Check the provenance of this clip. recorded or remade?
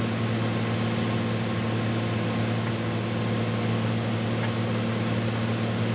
recorded